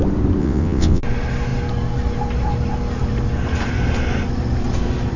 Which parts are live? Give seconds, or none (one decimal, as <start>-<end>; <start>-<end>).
0.0-0.4; 1.0-5.2